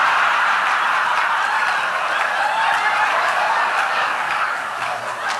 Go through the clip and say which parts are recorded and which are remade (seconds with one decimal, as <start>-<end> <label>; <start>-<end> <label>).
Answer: 0.0-3.1 recorded; 3.1-5.0 remade; 5.0-5.4 recorded